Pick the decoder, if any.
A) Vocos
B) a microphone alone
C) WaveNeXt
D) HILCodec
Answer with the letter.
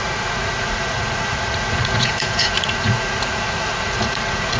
A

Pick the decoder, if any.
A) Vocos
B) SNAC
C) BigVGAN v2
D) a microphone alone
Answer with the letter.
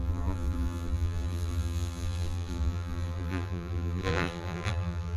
C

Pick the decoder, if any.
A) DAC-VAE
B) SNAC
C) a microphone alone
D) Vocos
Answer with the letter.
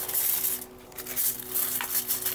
C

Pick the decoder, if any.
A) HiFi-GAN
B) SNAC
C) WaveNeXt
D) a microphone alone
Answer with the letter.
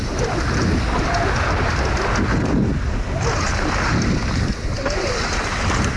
D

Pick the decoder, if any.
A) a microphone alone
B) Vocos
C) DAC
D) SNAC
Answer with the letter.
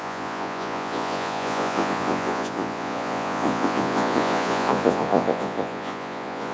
B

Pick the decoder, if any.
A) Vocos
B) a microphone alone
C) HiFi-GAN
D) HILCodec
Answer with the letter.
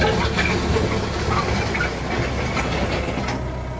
B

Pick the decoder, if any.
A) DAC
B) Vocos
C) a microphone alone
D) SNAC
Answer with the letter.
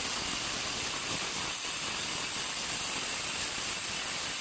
C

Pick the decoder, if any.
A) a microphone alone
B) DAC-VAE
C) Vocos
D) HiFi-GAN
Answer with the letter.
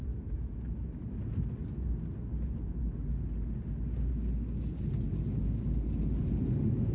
A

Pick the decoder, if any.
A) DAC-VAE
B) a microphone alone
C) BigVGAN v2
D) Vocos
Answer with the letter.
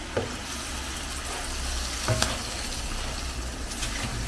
B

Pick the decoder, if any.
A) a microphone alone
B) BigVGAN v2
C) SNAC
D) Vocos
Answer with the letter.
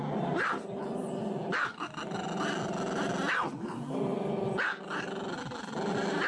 A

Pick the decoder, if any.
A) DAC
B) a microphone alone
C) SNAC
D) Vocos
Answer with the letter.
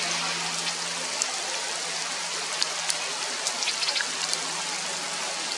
B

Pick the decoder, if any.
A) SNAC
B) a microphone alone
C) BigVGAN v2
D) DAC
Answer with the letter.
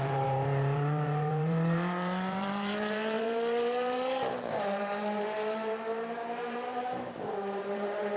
C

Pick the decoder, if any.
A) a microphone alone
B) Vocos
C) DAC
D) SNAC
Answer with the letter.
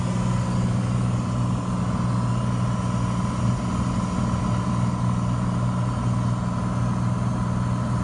A